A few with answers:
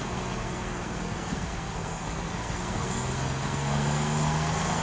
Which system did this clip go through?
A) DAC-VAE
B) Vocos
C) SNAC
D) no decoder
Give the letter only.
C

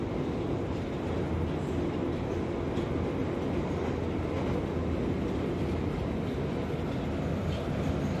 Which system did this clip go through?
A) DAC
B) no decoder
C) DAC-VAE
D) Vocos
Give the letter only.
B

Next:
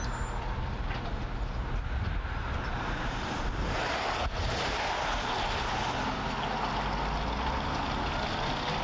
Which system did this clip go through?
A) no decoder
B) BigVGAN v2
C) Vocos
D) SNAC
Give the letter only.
A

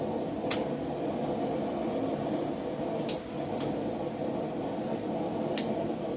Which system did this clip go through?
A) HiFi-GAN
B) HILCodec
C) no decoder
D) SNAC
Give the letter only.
C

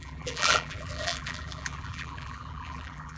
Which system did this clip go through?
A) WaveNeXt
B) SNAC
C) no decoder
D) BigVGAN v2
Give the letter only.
D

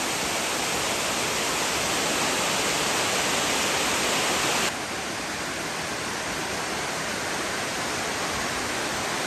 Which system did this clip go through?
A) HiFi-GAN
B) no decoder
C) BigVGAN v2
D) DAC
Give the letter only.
B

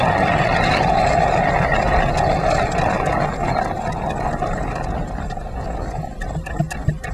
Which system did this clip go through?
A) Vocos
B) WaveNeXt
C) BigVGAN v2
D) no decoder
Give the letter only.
D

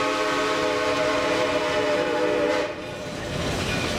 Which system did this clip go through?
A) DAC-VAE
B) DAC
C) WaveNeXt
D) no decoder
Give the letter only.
D